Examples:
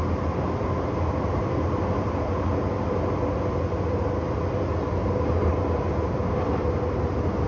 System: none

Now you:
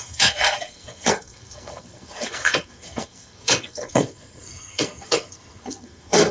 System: codec, SNAC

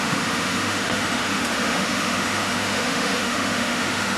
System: autoencoder, DAC-VAE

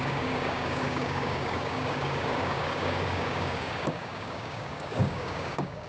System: codec, DAC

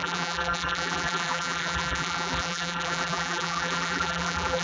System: vocoder, BigVGAN v2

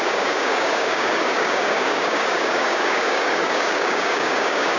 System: codec, DAC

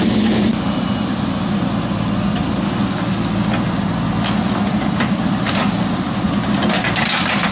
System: none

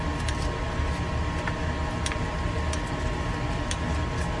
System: none